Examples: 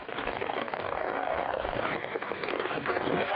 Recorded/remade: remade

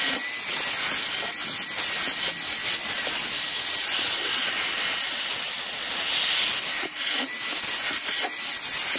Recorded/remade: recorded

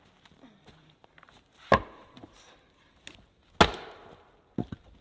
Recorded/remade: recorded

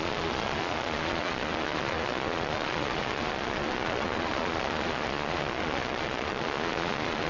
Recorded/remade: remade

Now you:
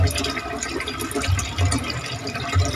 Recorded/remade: recorded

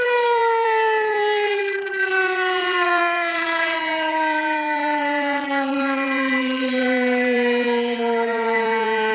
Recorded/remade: remade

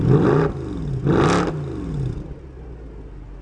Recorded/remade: recorded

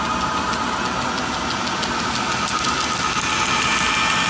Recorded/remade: recorded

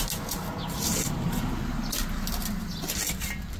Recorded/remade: recorded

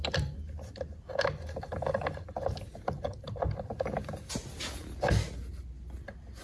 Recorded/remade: recorded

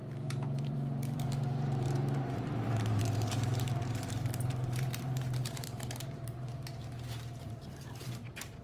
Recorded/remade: remade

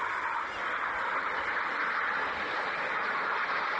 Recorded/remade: recorded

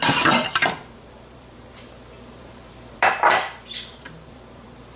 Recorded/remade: remade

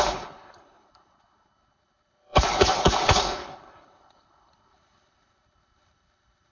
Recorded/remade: remade